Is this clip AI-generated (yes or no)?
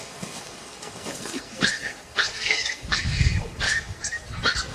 yes